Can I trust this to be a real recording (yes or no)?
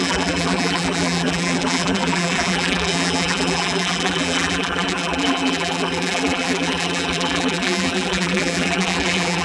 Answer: no